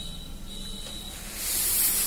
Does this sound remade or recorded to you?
recorded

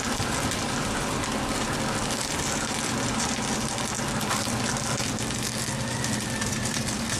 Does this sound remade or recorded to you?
recorded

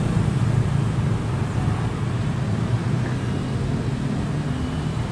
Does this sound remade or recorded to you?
recorded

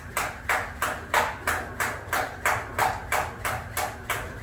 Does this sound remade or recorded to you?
recorded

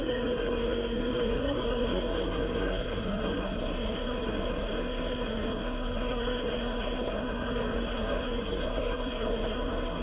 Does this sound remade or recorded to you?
remade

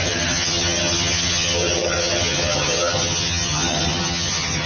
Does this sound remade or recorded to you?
remade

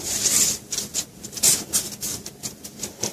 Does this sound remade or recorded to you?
recorded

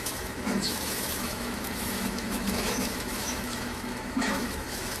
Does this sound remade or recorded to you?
remade